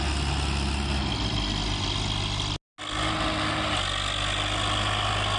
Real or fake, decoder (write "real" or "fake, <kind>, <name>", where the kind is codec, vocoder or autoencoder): real